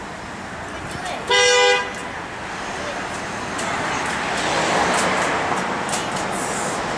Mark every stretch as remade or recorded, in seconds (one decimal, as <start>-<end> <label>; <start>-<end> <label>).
0.0-7.0 recorded